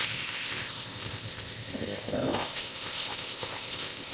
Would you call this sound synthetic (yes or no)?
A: yes